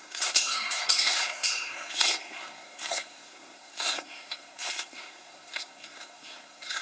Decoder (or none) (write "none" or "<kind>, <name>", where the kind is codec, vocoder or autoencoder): codec, SNAC